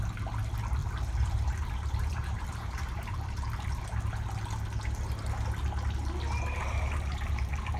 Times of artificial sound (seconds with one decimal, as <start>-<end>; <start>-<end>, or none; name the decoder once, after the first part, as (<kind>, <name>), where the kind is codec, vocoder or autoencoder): 0.8-3.8 (vocoder, BigVGAN v2); 6.6-7.8